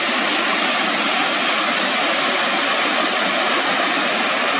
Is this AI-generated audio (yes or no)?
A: no